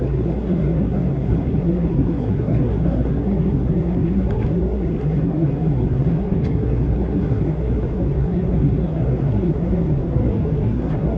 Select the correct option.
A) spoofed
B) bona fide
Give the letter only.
A